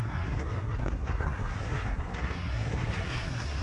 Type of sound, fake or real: fake